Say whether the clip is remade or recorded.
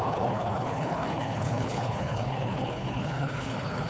remade